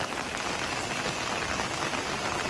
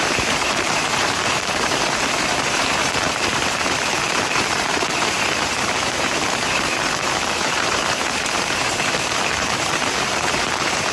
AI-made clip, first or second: second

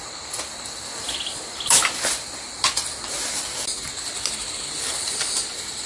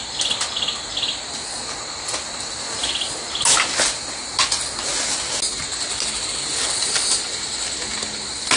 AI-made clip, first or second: first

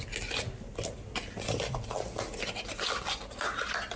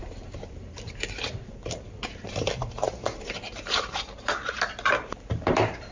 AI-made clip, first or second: second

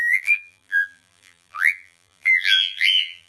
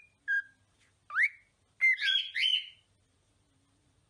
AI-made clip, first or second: first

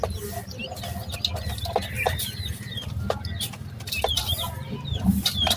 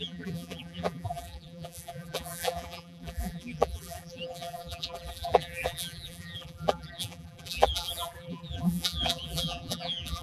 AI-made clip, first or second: second